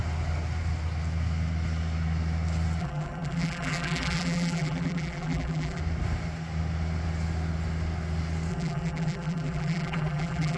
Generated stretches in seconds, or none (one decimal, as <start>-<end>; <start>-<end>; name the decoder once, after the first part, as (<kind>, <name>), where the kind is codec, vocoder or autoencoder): 2.8-5.8 (vocoder, BigVGAN v2); 8.5-10.6